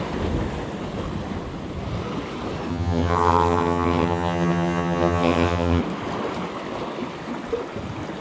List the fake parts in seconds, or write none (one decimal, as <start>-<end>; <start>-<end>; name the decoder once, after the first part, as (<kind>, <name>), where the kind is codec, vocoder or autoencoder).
2.7-5.8 (vocoder, HiFi-GAN)